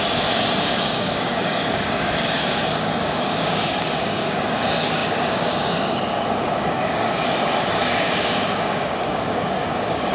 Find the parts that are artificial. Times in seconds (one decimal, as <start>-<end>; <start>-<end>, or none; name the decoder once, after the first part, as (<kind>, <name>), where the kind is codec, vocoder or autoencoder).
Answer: 0.0-10.1 (codec, DAC)